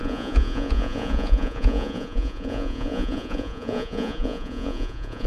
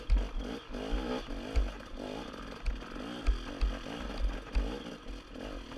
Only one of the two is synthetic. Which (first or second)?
first